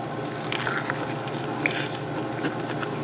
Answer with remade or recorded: recorded